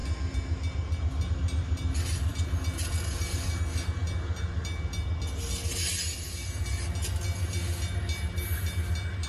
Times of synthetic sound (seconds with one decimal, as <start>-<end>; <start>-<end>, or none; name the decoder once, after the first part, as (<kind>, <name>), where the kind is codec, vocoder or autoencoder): none